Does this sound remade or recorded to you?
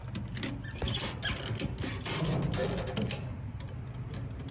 recorded